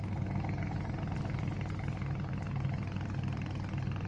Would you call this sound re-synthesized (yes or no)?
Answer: no